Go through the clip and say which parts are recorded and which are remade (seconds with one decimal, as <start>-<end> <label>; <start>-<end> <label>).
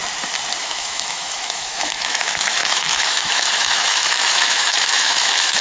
0.0-0.6 recorded; 0.6-5.6 remade